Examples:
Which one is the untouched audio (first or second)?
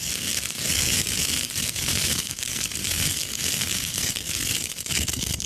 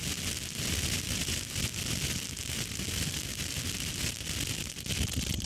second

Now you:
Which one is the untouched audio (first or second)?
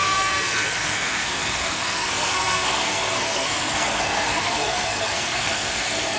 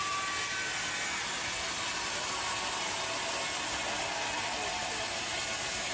second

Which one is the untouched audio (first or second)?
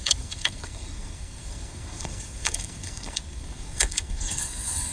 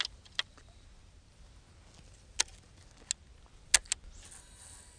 second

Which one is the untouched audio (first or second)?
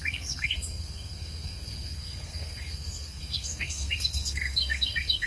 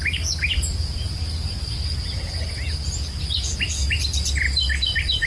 second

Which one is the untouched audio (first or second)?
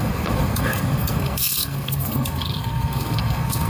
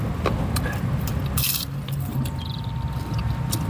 second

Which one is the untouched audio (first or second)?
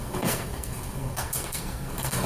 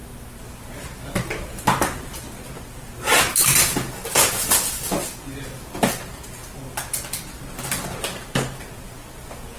second